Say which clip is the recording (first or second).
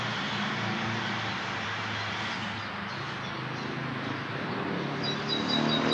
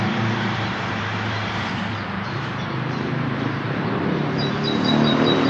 first